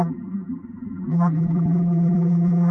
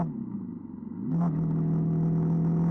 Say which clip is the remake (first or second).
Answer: first